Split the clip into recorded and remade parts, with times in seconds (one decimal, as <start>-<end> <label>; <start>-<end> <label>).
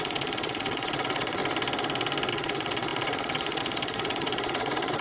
0.0-1.4 remade; 1.4-2.3 recorded; 2.3-5.0 remade